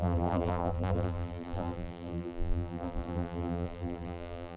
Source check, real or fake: fake